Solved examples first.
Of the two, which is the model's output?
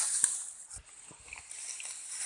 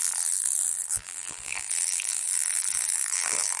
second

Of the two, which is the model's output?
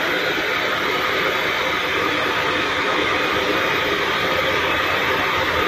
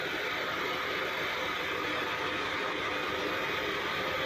first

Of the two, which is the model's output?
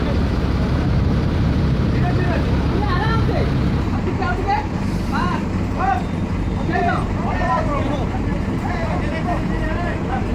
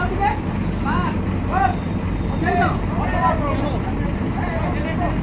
first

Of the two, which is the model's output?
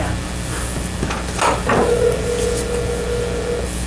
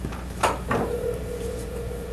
second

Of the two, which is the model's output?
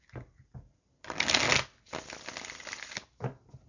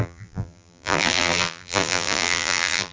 second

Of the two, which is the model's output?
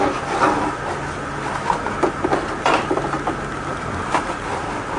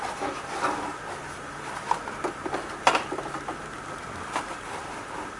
second